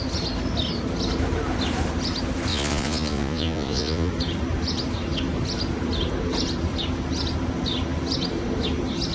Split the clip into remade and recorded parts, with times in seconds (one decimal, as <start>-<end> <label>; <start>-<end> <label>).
0.0-2.5 recorded; 2.5-4.1 remade; 4.1-9.1 recorded